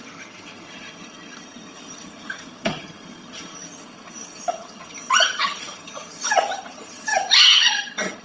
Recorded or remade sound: remade